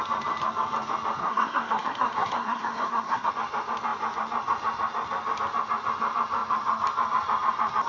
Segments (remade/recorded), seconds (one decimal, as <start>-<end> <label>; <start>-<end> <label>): 0.0-1.2 recorded; 1.2-3.3 remade; 3.3-7.9 recorded